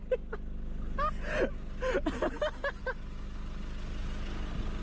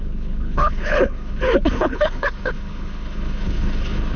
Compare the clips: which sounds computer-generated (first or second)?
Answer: second